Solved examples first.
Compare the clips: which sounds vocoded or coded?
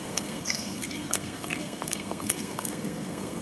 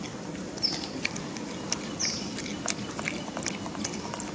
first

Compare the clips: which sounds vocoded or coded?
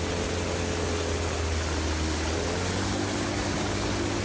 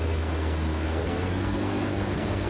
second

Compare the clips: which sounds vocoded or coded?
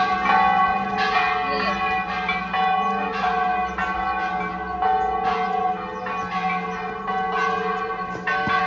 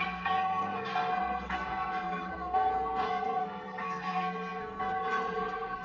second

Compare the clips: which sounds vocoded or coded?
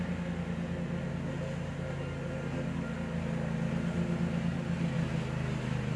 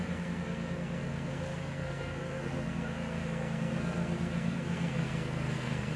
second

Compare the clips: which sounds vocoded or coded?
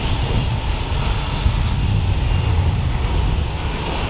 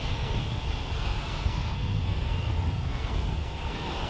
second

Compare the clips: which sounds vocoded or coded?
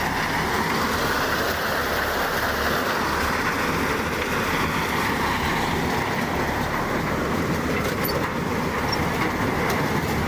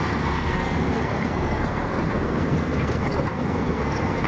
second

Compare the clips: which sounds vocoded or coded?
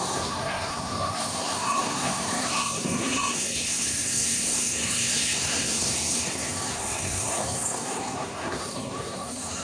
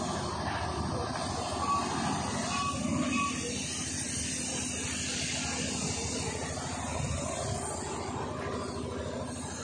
first